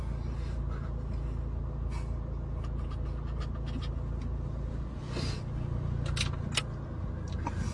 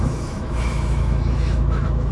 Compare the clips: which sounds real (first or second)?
first